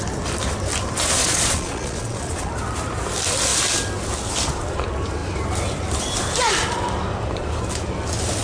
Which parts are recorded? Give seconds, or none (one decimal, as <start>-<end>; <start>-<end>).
0.0-1.2; 2.5-8.4